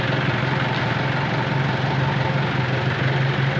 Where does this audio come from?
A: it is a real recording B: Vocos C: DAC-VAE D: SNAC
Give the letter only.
A